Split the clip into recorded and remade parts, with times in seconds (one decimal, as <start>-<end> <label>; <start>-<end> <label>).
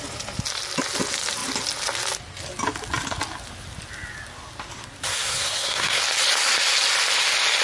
0.0-5.1 recorded; 5.1-6.0 remade; 6.0-7.6 recorded